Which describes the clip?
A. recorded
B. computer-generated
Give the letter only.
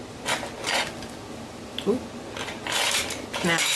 A